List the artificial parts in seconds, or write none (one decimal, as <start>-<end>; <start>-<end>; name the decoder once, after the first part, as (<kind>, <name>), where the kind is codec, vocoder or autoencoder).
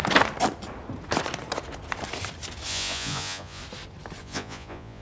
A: 2.7-3.6 (vocoder, Vocos); 4.2-5.0